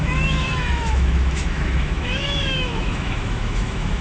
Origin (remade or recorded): remade